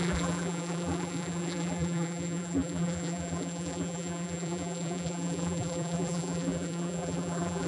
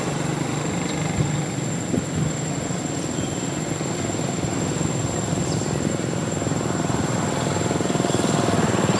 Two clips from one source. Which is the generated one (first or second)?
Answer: first